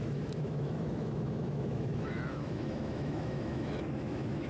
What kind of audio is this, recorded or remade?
remade